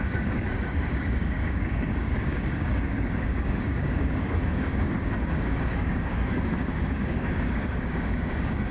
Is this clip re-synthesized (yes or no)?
yes